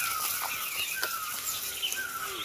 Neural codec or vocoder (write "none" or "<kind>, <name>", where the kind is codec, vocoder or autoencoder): none